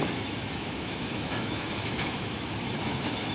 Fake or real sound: fake